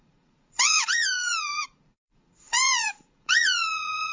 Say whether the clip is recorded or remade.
remade